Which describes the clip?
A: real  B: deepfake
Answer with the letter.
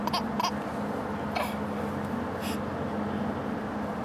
A